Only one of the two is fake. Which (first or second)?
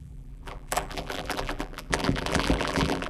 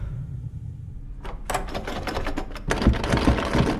first